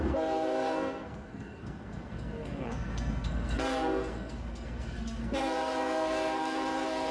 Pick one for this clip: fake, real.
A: fake